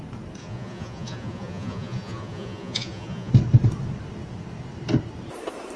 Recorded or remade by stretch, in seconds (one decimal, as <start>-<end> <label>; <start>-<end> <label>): 0.0-0.4 recorded; 0.4-3.3 remade; 3.3-5.8 recorded